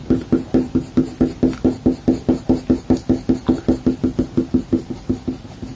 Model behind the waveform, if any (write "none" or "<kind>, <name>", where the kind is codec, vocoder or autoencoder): none